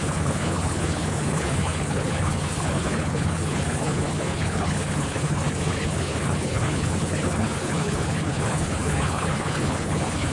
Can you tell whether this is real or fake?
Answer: fake